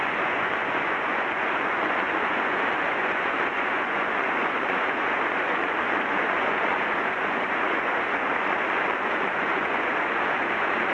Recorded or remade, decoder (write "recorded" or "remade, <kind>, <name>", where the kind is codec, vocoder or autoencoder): remade, vocoder, Vocos